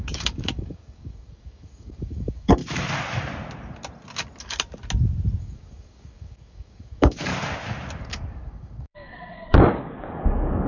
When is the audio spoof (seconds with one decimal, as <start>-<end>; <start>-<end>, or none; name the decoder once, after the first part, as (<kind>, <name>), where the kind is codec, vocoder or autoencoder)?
0.0-2.6 (codec, DAC); 5.4-7.3; 8.0-10.7